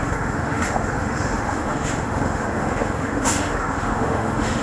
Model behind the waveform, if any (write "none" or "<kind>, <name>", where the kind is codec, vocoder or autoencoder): autoencoder, DAC-VAE